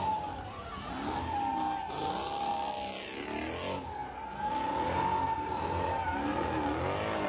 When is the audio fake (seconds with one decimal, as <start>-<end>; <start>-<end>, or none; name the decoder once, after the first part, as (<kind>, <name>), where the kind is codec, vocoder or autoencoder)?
none